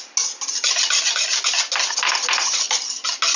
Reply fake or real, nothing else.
real